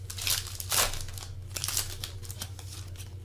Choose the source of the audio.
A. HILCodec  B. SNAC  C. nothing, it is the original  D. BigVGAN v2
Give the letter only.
C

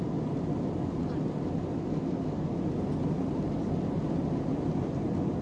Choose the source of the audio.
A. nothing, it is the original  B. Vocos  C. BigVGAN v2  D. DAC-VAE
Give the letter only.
A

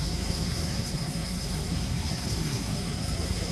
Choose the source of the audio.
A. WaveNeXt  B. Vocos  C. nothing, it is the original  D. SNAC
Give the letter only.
D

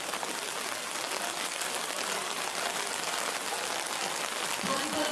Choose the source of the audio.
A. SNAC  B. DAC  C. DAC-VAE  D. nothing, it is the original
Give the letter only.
D